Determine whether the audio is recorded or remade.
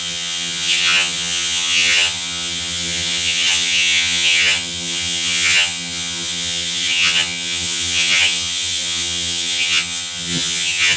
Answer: remade